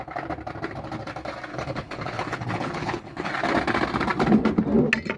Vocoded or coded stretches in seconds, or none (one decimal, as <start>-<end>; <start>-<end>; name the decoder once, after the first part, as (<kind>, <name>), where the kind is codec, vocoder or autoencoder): 1.5-3.3 (codec, HILCodec)